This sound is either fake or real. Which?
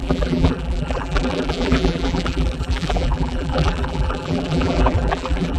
fake